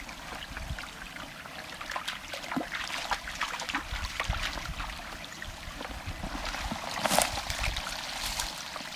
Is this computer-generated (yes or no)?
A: no